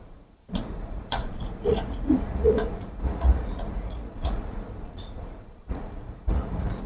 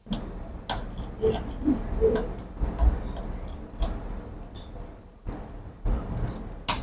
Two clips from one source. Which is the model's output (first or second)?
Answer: first